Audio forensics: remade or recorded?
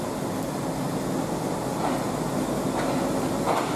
recorded